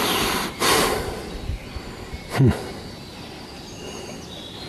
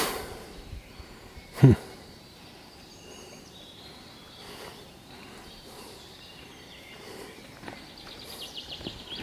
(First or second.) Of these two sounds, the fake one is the second